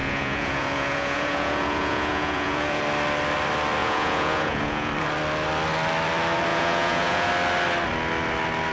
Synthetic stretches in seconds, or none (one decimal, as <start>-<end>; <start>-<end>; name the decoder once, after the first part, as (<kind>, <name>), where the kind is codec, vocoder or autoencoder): 0.0-2.8 (vocoder, Vocos); 3.8-4.9; 6.5-7.3